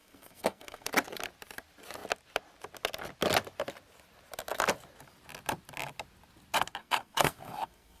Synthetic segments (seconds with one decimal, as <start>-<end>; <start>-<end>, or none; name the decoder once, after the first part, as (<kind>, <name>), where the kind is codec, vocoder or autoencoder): 0.0-0.9 (codec, SNAC); 6.8-8.0